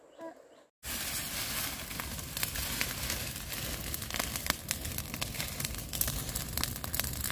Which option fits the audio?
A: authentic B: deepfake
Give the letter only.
A